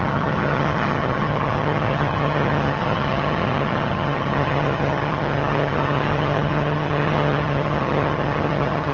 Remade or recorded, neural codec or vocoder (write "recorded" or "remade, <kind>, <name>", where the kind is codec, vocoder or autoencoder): remade, vocoder, HiFi-GAN